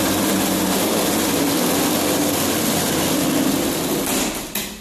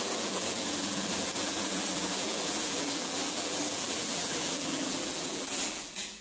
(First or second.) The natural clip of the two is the first